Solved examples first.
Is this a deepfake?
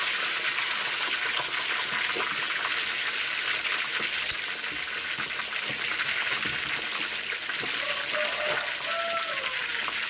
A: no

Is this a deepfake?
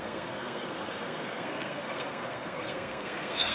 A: yes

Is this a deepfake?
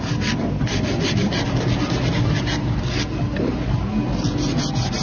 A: no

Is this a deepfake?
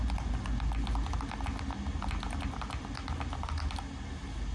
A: no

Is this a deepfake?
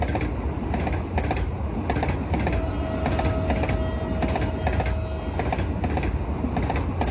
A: no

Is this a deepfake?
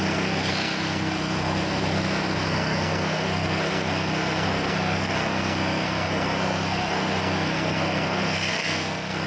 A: yes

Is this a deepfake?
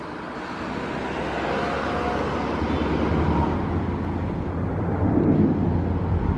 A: no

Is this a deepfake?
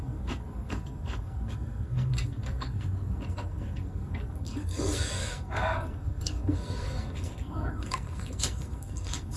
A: yes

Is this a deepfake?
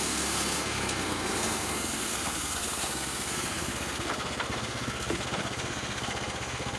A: yes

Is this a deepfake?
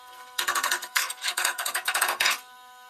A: yes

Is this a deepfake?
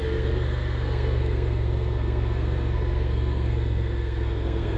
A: yes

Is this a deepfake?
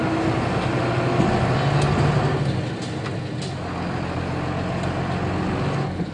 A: no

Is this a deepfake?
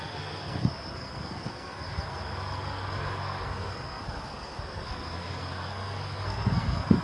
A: yes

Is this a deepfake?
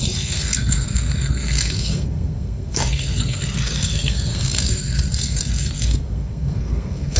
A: yes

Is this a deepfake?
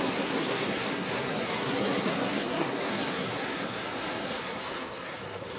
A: yes